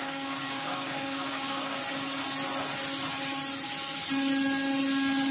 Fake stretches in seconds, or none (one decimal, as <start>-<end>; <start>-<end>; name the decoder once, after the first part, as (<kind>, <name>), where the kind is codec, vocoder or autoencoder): 0.0-1.8 (codec, DAC)